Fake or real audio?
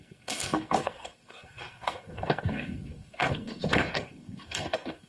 fake